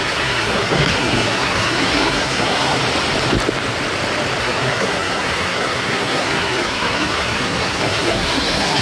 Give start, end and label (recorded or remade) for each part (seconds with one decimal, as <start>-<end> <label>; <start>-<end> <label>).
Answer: 0.0-2.8 remade; 2.8-4.4 recorded; 4.4-8.8 remade